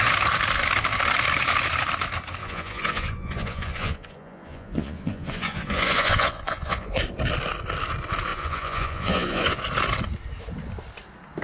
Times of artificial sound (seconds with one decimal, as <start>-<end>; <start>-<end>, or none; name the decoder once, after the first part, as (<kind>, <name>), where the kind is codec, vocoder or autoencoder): 2.4-7.0 (vocoder, Vocos); 8.3-9.6